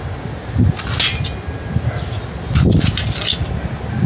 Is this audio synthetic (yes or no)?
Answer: no